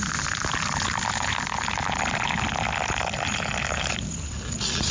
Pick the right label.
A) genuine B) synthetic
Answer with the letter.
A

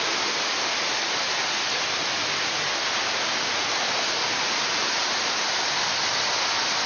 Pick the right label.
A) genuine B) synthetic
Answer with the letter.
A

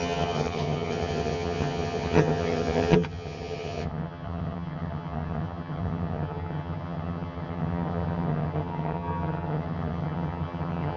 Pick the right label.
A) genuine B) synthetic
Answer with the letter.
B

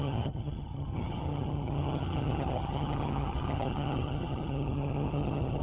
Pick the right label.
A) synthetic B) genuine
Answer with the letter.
A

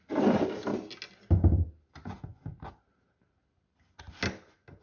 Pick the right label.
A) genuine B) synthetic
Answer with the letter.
A